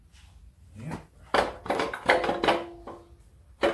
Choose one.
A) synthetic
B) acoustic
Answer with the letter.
B